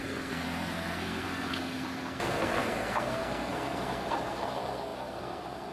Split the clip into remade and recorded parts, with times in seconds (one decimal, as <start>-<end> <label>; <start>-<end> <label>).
0.0-5.7 remade